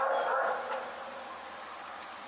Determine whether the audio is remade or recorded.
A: recorded